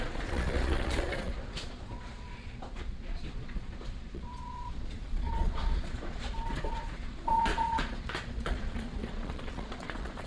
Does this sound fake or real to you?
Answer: fake